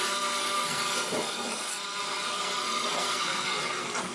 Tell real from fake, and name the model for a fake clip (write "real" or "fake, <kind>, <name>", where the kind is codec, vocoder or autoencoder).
fake, codec, SNAC